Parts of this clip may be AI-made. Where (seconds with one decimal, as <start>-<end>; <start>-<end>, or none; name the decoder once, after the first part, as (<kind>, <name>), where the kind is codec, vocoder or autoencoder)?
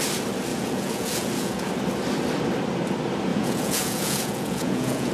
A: 0.5-1.7 (vocoder, Vocos); 3.3-5.1